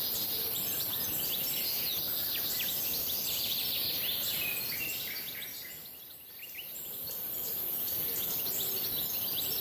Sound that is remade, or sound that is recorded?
recorded